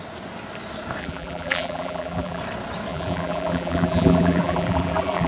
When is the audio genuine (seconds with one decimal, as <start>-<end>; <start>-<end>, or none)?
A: 0.0-1.0; 2.4-2.9